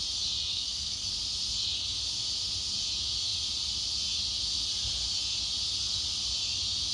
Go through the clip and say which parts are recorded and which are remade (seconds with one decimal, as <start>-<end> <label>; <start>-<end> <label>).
0.0-0.5 recorded; 0.5-1.1 remade; 1.1-6.9 recorded